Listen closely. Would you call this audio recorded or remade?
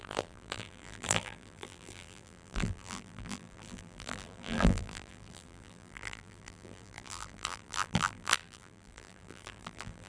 remade